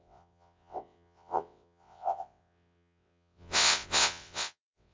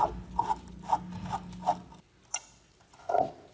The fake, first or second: first